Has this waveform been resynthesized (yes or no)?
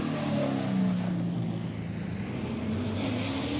no